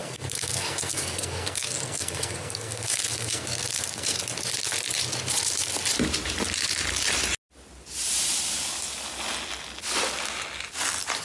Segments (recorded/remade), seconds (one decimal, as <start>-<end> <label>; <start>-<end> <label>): 0.0-4.2 remade; 4.2-11.2 recorded